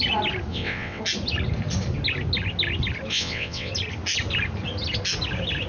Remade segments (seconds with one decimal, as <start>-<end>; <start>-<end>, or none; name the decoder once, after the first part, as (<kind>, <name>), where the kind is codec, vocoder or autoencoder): 0.5-1.0 (vocoder, WaveNeXt); 3.1-3.7